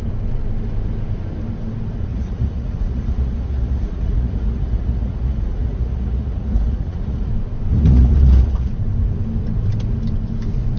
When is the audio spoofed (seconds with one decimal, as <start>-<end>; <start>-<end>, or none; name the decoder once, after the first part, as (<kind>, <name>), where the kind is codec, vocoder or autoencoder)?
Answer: 2.1-7.3 (vocoder, Vocos); 7.7-8.7